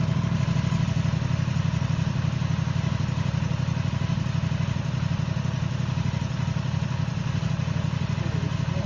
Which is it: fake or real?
real